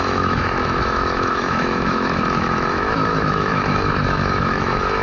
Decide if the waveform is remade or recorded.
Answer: remade